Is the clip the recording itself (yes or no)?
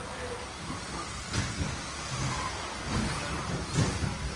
yes